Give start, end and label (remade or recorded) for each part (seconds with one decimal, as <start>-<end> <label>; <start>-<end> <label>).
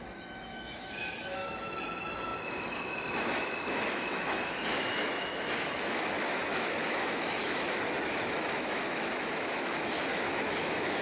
0.0-11.0 remade